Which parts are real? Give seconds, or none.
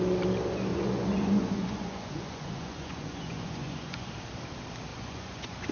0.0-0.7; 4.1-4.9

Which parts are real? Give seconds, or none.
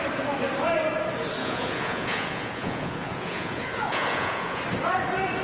0.0-1.4; 4.6-5.4